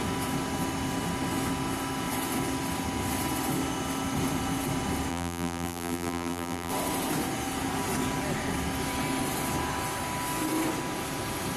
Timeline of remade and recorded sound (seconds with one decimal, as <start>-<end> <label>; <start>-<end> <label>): 0.0-5.1 recorded; 5.1-6.7 remade; 6.7-11.6 recorded